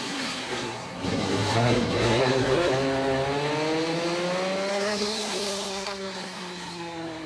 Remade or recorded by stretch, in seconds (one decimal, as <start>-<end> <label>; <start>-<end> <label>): 0.0-2.7 remade; 2.7-4.7 recorded; 4.7-7.3 remade